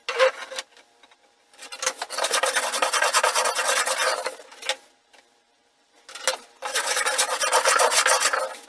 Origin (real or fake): real